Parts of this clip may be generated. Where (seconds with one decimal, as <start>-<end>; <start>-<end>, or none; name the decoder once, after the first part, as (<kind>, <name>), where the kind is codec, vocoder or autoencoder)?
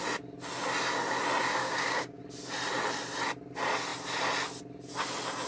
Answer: 1.6-2.2 (codec, DAC)